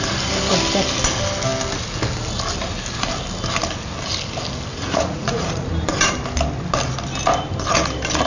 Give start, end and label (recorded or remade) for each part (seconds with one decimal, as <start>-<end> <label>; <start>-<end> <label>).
0.0-4.7 recorded; 4.7-5.7 remade; 5.7-8.3 recorded